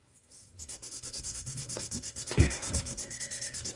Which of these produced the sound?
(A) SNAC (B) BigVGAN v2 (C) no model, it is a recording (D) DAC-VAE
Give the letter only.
A